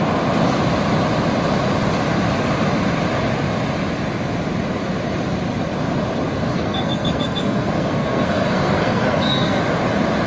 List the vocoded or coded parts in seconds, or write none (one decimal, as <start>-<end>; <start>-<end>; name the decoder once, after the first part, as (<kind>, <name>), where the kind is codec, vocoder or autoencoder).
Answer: 6.5-9.6 (codec, SNAC)